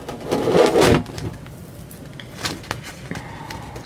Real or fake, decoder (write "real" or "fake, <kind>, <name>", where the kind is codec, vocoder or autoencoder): real